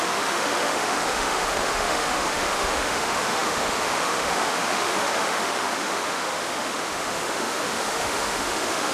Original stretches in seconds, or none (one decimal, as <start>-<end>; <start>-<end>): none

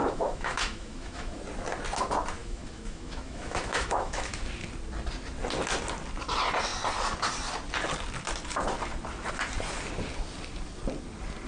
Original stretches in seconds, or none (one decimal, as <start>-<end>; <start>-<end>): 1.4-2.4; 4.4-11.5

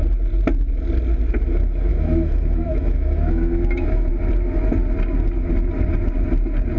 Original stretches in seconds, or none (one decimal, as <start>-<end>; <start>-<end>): 0.0-1.9; 4.1-6.8

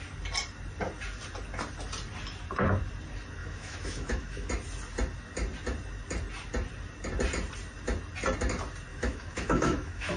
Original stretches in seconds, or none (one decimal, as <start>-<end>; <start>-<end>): 0.0-3.4; 4.5-8.9